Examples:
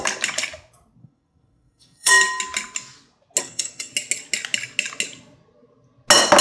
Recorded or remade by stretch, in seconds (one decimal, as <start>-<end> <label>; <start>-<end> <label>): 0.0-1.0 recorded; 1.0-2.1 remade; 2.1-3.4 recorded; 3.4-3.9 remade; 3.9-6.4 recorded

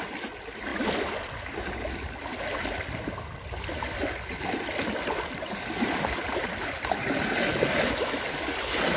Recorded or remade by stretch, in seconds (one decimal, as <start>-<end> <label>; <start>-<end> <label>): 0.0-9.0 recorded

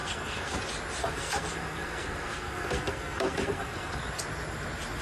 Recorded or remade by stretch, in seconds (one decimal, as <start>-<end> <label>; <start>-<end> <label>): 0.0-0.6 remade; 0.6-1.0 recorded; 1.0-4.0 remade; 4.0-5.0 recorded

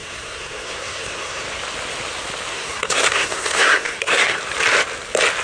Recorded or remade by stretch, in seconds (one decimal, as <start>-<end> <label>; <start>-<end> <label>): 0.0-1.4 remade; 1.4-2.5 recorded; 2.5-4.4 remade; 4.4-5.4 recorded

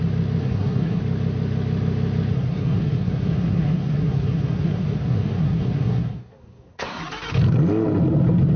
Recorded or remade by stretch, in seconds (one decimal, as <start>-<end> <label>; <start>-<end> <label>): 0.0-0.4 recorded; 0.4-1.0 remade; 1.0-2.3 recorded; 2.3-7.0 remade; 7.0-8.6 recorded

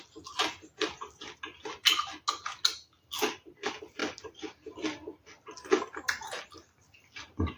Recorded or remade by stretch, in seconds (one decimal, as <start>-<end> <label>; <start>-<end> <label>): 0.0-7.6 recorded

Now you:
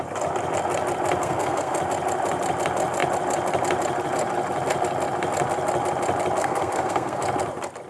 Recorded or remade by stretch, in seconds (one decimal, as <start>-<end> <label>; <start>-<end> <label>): 0.0-1.2 recorded; 1.2-1.8 remade; 1.8-6.4 recorded; 6.4-7.2 remade; 7.2-7.9 recorded

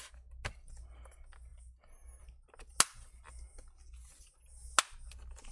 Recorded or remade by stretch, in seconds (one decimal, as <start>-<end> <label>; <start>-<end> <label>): 0.0-5.5 recorded